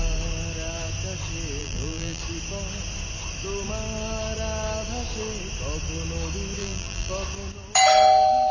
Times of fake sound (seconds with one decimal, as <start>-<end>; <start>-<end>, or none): 1.6-2.2; 6.6-7.1